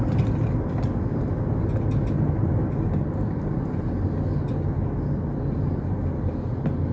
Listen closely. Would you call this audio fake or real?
real